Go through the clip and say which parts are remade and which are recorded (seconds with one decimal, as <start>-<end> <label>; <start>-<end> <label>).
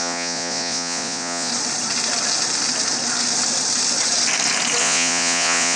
0.0-1.5 remade; 1.5-4.8 recorded; 4.8-5.8 remade